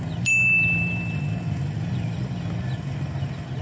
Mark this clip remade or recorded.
recorded